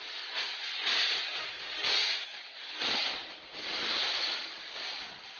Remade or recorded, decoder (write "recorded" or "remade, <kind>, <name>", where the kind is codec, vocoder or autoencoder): recorded